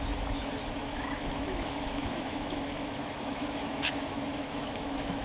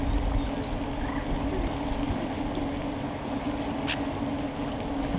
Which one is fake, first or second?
first